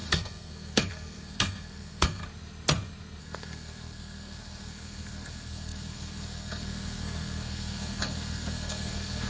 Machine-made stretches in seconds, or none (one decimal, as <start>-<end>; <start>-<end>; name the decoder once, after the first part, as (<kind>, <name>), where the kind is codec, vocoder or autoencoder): 0.0-2.2 (codec, SNAC); 3.2-9.3